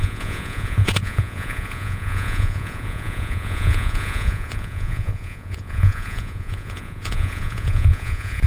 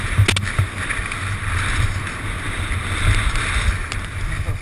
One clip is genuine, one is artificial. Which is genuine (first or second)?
second